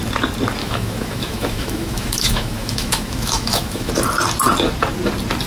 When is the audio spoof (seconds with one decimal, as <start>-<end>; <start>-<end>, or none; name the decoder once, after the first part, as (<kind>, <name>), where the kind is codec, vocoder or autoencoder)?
0.6-3.9 (autoencoder, DAC-VAE)

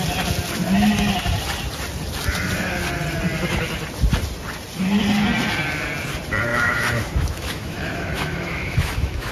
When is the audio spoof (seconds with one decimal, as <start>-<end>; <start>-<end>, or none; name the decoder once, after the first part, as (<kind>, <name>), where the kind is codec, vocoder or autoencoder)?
6.5-9.3 (autoencoder, DAC-VAE)

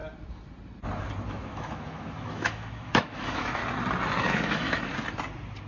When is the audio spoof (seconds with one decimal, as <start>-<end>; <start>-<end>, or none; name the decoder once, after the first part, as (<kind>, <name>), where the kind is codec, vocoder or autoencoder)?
1.3-3.6 (autoencoder, DAC-VAE); 4.2-4.9